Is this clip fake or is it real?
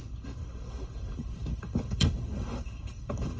fake